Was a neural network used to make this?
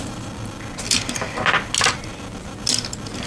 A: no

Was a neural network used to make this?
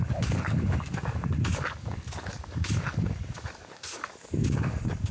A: yes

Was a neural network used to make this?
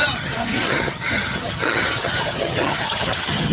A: yes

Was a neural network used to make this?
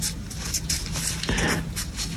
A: no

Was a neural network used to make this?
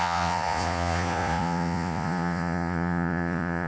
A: yes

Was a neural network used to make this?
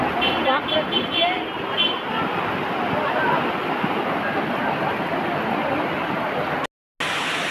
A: no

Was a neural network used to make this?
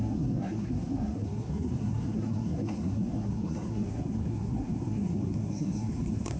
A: yes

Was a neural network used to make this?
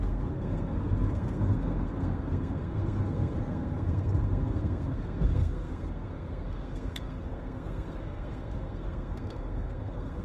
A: yes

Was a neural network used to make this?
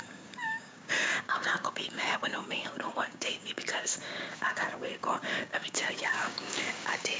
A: yes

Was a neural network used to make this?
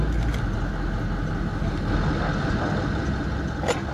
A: no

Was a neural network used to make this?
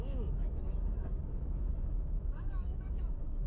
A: yes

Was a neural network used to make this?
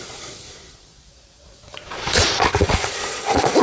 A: yes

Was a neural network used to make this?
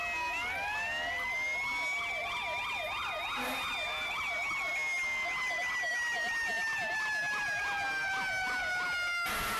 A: no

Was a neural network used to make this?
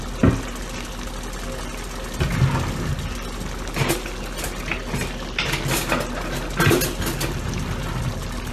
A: no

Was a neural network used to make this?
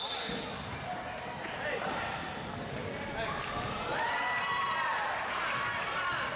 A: no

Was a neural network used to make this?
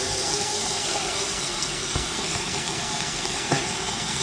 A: yes